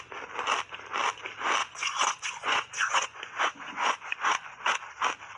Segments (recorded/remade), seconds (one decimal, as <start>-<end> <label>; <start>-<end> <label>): 0.0-1.6 recorded; 1.6-4.8 remade; 4.8-5.4 recorded